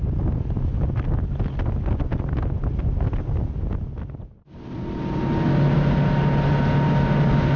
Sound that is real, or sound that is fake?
real